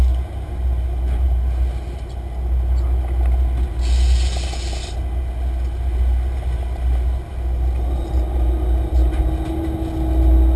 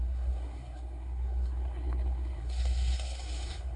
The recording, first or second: first